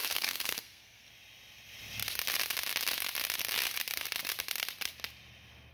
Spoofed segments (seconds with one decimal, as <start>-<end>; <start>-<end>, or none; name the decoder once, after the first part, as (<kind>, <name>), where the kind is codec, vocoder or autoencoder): 0.0-1.1 (codec, SNAC)